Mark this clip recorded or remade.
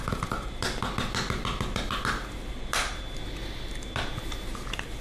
recorded